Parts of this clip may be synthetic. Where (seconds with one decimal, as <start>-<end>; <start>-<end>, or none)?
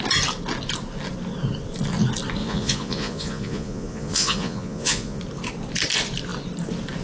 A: 2.4-5.2